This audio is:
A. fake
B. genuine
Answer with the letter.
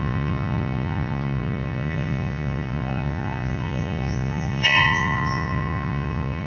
A